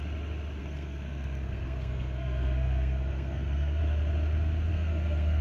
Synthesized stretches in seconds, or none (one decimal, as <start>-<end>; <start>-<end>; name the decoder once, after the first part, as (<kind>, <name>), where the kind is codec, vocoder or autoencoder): 0.6-3.8 (codec, SNAC); 4.7-5.4